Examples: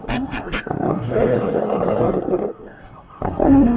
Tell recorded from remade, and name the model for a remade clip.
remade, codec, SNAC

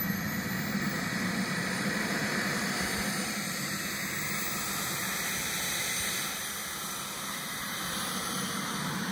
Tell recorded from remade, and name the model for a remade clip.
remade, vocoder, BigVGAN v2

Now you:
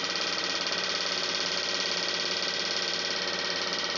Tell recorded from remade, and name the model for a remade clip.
recorded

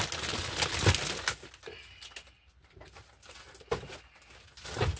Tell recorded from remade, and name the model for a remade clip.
recorded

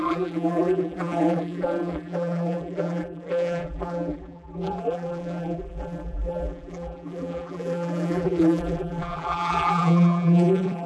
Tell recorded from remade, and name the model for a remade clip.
remade, vocoder, BigVGAN v2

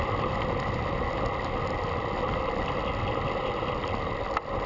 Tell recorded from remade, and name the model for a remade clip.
recorded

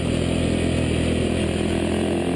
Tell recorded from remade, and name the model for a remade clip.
recorded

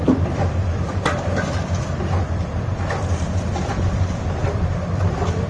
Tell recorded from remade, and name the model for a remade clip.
remade, vocoder, BigVGAN v2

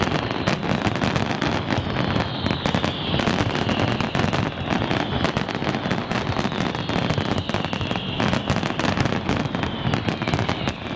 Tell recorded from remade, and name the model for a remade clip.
recorded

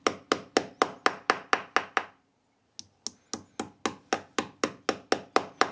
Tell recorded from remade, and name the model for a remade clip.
recorded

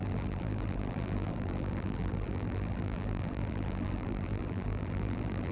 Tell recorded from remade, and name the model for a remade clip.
remade, vocoder, BigVGAN v2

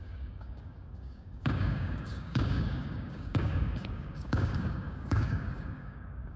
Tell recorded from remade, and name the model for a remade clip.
remade, codec, DAC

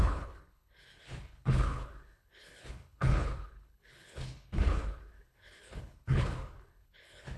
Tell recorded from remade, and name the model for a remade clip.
remade, codec, HILCodec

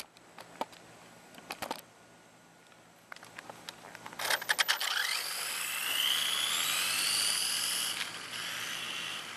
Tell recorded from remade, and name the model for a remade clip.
recorded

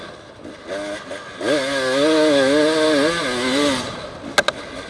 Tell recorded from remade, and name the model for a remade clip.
recorded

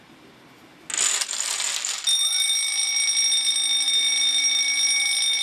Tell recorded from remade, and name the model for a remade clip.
recorded